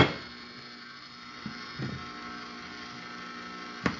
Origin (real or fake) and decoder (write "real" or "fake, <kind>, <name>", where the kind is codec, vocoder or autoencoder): real